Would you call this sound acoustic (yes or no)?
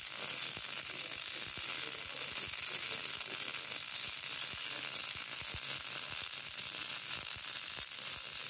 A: yes